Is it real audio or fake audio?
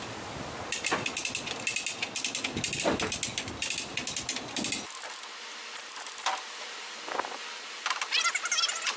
real